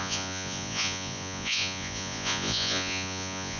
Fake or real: fake